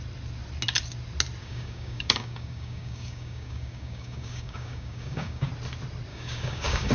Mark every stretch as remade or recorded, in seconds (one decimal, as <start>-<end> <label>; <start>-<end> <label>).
0.0-1.4 recorded; 1.4-5.5 remade; 5.5-6.1 recorded; 6.1-6.9 remade